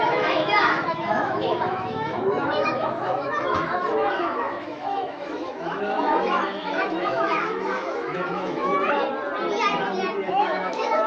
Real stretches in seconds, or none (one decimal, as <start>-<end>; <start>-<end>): 8.7-10.3